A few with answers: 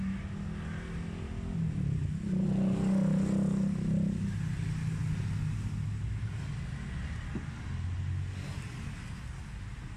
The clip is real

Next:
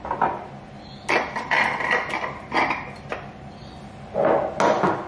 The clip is real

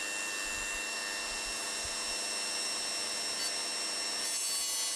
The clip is real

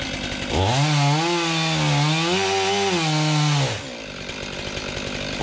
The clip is real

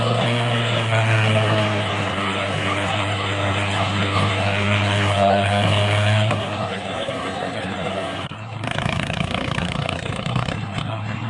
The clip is fake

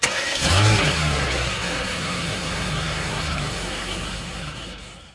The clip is fake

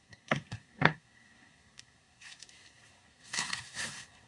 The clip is fake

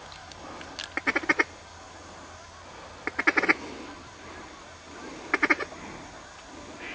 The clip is real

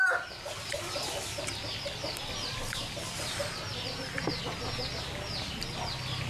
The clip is real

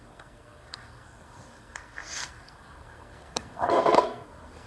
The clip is fake